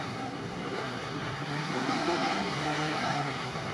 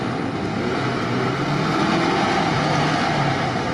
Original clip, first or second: second